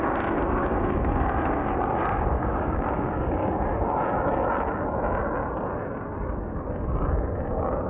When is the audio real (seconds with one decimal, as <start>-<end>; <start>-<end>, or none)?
3.4-7.9